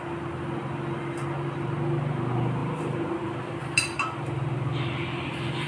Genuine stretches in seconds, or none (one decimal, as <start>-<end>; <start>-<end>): 0.0-2.6

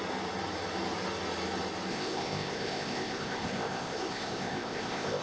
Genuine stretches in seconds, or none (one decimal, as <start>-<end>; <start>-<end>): 0.0-1.9

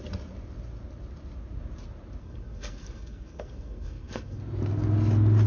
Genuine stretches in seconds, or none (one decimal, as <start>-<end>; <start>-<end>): 0.0-2.2; 4.4-5.5

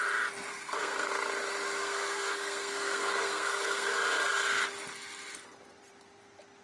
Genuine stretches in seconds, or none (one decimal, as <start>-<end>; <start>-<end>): 0.0-0.5; 1.1-1.8; 3.9-6.6